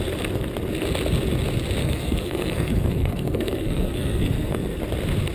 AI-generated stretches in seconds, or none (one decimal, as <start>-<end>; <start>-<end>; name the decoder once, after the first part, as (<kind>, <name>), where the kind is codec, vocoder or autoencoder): 1.8-4.8 (codec, SNAC)